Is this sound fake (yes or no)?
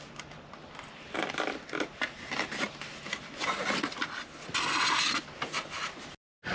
no